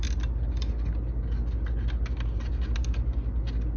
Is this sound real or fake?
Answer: real